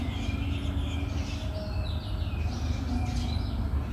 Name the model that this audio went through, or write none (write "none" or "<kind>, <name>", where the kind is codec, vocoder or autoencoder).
none